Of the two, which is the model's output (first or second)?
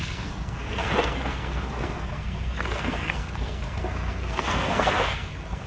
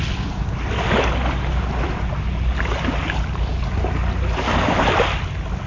first